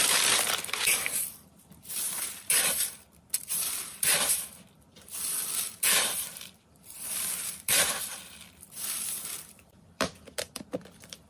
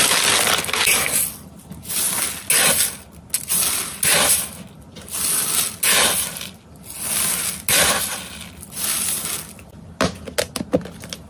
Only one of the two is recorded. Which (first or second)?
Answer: second